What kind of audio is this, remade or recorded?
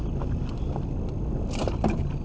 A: recorded